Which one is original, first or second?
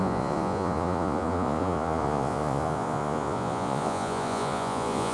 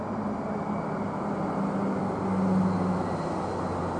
second